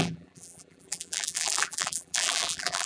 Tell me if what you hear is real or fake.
fake